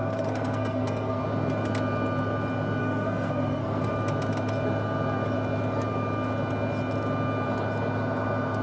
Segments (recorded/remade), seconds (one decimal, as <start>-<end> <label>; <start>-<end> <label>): 0.0-1.2 remade; 1.2-2.8 recorded; 2.8-3.9 remade; 3.9-8.6 recorded